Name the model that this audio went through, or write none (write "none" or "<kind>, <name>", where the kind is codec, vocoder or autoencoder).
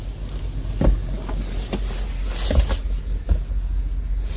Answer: none